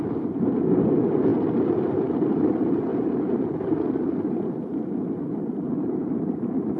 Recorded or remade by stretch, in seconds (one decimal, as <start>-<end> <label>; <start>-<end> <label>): 0.0-6.8 recorded